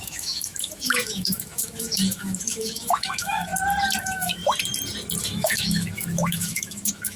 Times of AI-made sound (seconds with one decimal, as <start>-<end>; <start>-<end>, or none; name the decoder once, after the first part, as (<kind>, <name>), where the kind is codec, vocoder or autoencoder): 0.0-3.5 (autoencoder, DAC-VAE); 4.0-4.4; 5.2-7.2